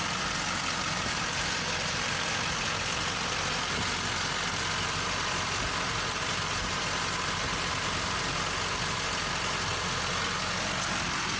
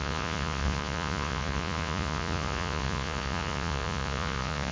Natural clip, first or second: first